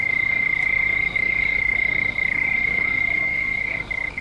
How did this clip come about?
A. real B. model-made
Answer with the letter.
B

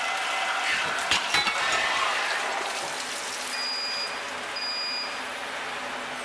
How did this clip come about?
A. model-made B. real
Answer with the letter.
B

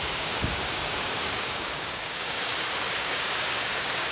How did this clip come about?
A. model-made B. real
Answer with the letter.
A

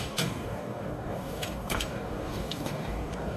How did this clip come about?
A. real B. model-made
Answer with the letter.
B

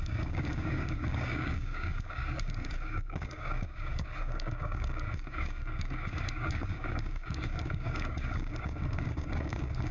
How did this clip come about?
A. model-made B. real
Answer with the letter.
A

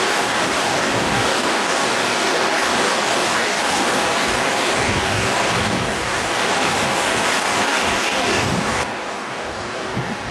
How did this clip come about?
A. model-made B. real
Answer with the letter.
A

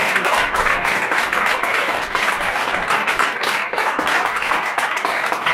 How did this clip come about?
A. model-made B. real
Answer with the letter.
A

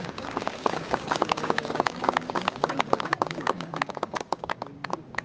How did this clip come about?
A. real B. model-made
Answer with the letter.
B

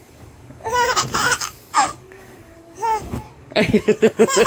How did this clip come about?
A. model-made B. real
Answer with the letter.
A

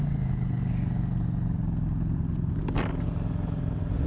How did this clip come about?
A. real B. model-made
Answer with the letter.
A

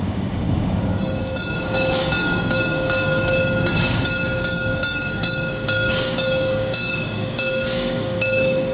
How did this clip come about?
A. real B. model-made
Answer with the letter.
B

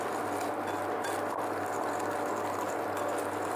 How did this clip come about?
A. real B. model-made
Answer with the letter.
A